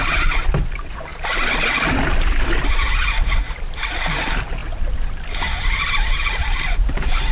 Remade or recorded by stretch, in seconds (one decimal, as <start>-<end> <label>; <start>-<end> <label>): 0.0-1.1 remade; 1.1-3.8 recorded; 3.8-4.6 remade; 4.6-6.2 recorded; 6.2-7.3 remade